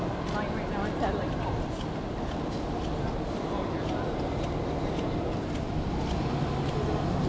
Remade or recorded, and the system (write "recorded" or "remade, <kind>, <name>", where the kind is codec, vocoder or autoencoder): recorded